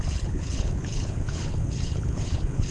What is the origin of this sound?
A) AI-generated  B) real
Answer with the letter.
A